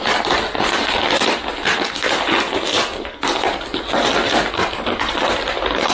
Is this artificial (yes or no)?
no